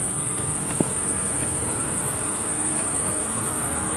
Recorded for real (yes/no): no